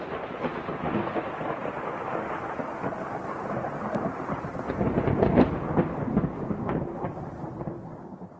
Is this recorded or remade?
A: recorded